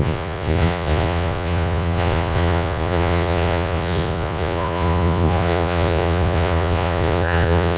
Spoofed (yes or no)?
yes